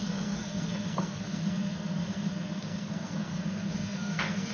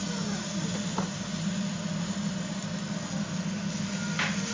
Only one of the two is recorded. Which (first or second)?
second